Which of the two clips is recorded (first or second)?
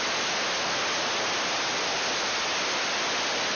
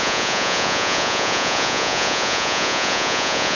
first